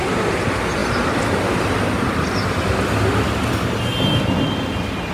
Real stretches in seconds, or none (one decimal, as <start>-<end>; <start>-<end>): 0.0-5.1